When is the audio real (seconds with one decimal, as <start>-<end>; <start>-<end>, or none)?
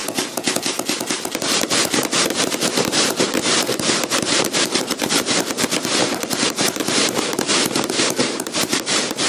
0.0-1.9